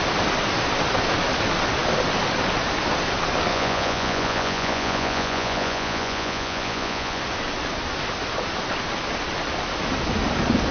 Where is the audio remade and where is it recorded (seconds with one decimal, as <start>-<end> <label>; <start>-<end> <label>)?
0.0-3.5 recorded; 3.5-7.2 remade; 7.2-10.7 recorded